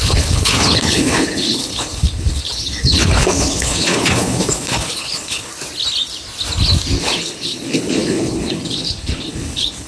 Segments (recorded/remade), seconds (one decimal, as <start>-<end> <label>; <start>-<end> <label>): 0.0-5.5 remade; 5.5-7.0 recorded; 7.0-9.9 remade